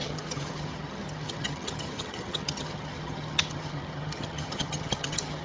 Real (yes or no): no